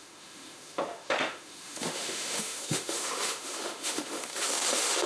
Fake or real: fake